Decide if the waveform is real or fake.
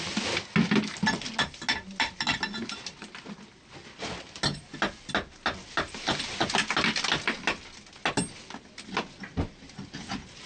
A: real